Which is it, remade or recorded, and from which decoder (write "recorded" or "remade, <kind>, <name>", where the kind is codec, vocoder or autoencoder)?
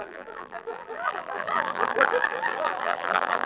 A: remade, vocoder, BigVGAN v2